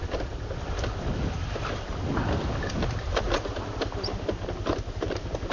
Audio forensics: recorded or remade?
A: recorded